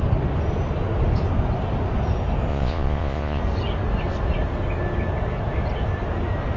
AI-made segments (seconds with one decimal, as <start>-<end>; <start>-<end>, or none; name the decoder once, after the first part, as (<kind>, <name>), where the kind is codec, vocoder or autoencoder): 2.5-3.4 (vocoder, Vocos)